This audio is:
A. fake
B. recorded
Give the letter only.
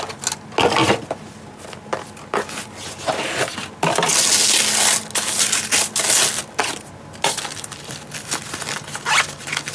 B